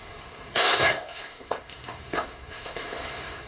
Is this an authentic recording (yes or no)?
no